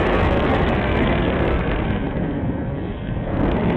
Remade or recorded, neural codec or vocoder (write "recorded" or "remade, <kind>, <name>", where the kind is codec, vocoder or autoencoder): remade, codec, SNAC